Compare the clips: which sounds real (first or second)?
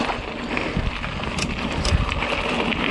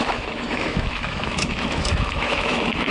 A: first